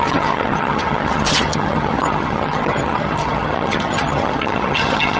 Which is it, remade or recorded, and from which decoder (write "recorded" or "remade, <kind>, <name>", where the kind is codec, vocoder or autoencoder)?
remade, vocoder, HiFi-GAN